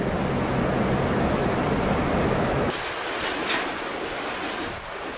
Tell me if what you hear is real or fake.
real